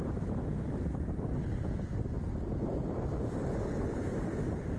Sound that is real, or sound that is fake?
real